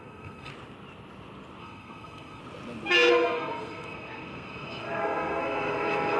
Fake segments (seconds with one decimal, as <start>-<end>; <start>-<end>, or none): 0.0-0.5; 1.6-2.4; 3.1-6.2